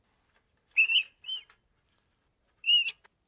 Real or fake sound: real